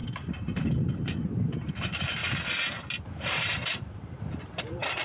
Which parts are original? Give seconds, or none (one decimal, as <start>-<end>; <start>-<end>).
2.2-3.0